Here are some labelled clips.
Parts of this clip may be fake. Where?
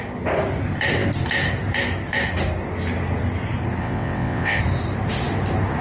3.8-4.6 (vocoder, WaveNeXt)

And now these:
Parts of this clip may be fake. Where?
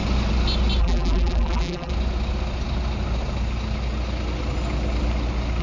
0.8-1.9 (vocoder, BigVGAN v2)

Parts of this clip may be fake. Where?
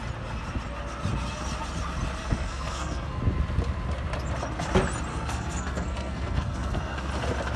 2.2-3.2 (codec, SNAC); 5.1-7.1